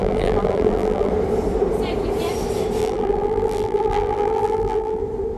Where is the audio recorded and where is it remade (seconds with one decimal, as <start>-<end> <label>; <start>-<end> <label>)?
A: 0.0-1.1 remade; 1.1-2.8 recorded; 2.8-5.0 remade; 5.0-5.4 recorded